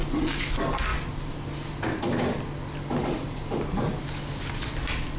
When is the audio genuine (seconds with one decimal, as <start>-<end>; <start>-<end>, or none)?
0.0-5.2